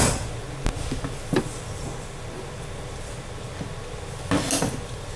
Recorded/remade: recorded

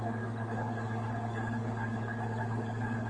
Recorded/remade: remade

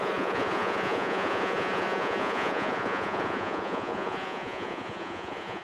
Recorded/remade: remade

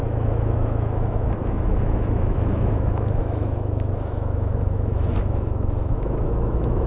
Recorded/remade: remade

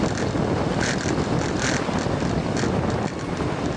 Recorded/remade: recorded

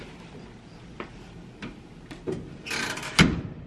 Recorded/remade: recorded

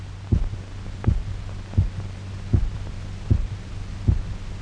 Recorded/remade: recorded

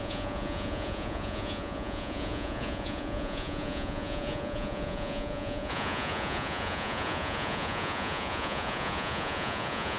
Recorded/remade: remade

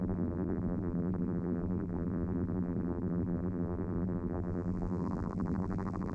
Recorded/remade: remade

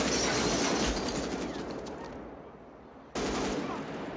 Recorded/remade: recorded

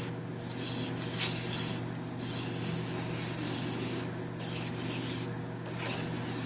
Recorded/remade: recorded